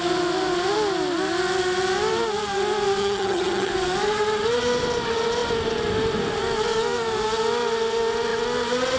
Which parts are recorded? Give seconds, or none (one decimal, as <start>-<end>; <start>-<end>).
0.0-3.0; 3.7-9.0